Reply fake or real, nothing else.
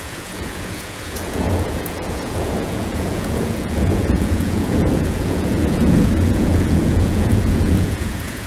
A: fake